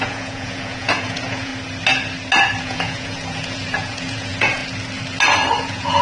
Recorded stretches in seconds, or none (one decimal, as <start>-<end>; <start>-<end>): 1.5-2.6; 4.6-5.6